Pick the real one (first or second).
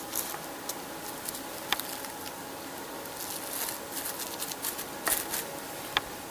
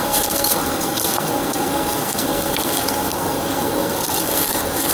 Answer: first